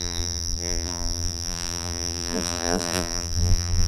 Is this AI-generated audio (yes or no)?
yes